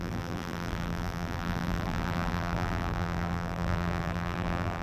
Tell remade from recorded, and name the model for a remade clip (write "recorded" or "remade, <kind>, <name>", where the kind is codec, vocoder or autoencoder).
remade, vocoder, BigVGAN v2